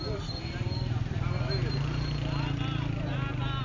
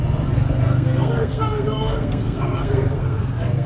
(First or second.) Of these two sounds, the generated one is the second